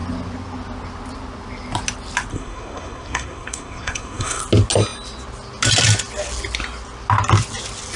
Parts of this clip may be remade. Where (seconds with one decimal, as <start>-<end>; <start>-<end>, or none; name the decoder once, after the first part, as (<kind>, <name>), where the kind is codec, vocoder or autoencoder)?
2.3-4.4 (codec, SNAC)